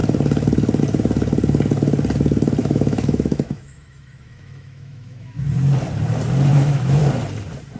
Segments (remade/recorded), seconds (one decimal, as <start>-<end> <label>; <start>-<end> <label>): 0.0-2.6 recorded; 2.6-5.4 remade; 5.4-6.5 recorded; 6.5-7.0 remade; 7.0-7.8 recorded